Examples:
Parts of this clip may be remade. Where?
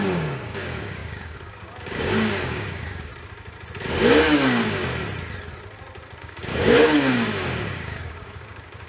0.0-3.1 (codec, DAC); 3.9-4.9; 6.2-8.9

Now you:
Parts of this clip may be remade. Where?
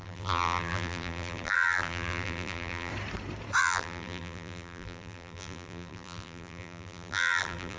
0.0-2.9 (vocoder, BigVGAN v2); 3.6-7.8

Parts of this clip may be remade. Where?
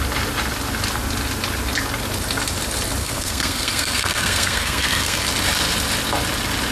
3.0-5.2 (codec, SNAC)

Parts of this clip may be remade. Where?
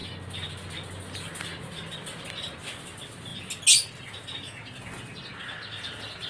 none